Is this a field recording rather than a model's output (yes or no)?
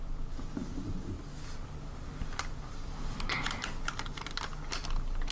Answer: yes